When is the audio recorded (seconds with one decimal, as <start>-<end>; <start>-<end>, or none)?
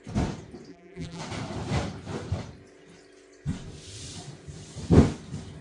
0.0-0.7; 1.2-5.6